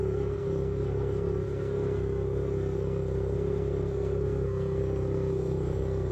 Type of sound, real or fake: fake